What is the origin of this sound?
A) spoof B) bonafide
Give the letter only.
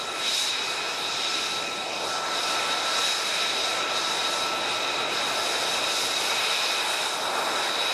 B